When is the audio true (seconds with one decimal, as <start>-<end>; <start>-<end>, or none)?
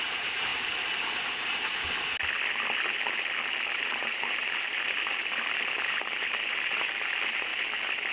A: 0.5-3.7; 7.5-8.1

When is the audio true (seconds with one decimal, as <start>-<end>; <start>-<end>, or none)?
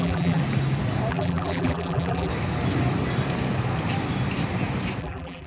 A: 0.4-1.1; 2.3-5.0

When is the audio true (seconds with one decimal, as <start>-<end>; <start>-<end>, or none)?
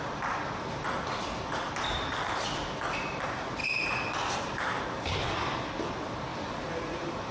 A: 0.0-3.6; 4.8-6.3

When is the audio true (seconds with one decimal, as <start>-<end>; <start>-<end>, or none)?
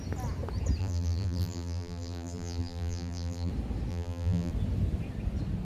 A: 0.0-0.8; 3.5-3.9; 4.5-5.6